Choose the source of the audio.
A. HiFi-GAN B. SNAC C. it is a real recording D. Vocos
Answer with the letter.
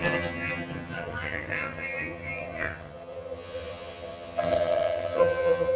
A